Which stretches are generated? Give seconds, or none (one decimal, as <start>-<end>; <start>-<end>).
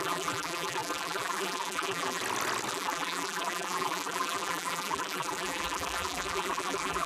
0.0-2.2; 2.7-7.1